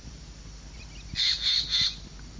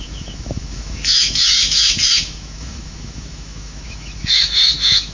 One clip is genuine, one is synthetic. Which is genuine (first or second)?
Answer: first